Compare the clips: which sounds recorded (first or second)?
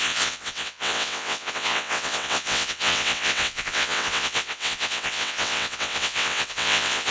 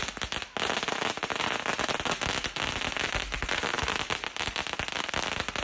second